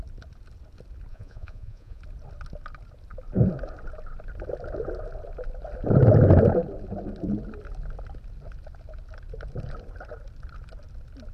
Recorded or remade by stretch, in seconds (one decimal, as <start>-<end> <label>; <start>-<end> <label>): 0.0-1.1 recorded; 1.1-2.0 remade; 2.0-11.3 recorded